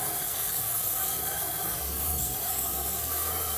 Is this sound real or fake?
fake